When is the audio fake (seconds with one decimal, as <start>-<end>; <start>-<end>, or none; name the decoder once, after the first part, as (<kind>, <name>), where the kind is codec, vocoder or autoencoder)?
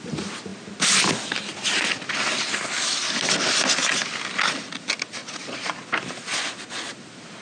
5.2-5.8 (vocoder, Vocos); 6.3-6.9